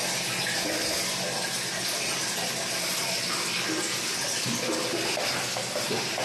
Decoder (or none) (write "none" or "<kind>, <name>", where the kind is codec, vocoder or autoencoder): none